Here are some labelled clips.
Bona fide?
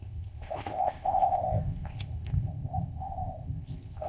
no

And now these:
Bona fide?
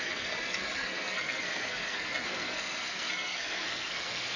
no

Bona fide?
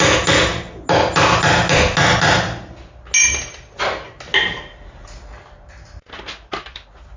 yes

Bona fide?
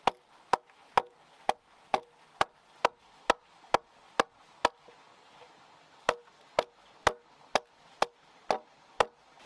yes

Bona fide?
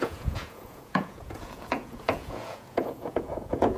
no